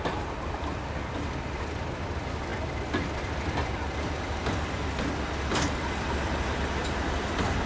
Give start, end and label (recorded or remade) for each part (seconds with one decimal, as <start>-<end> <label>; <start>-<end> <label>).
0.0-7.7 recorded